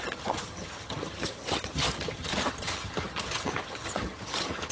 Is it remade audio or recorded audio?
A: remade